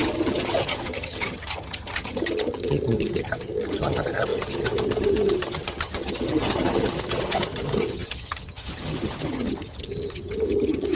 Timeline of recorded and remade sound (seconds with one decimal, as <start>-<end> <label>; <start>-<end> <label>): 0.0-10.9 remade